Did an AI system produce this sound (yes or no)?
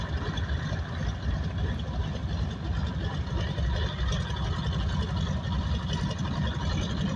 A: no